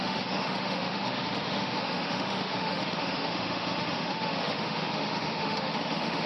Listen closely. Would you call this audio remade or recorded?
remade